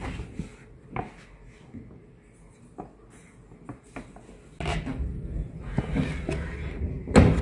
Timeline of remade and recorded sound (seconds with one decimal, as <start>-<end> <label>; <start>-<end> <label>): 0.0-7.4 recorded